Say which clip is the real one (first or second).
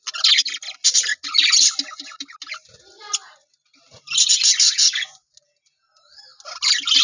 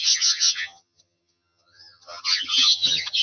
first